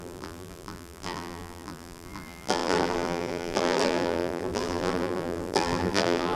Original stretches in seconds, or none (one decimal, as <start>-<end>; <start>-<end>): none

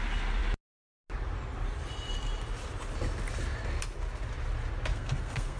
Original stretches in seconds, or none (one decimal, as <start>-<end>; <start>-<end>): 0.0-4.9

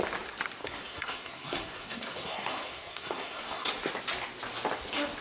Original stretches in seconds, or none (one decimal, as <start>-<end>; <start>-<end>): 0.0-0.6; 3.7-5.2

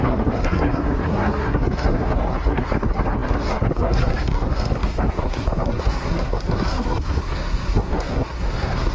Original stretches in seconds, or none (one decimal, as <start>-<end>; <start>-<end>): none

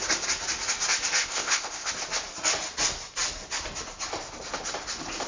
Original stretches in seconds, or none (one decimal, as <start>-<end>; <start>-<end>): 0.0-1.2; 1.9-5.3

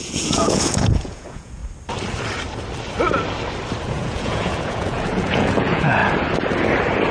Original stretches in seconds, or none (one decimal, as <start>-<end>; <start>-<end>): 1.6-3.9; 6.0-7.1

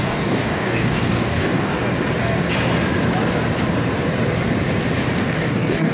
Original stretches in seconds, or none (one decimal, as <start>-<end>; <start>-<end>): 1.7-5.2